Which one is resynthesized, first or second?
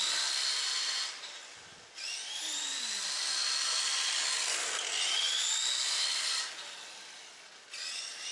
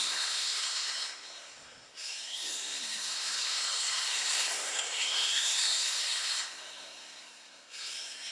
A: second